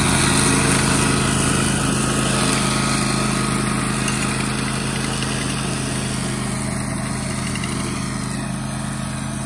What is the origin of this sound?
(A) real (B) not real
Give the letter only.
A